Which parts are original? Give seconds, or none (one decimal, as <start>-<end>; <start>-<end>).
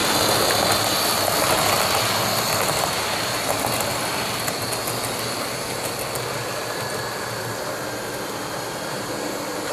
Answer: 0.0-9.7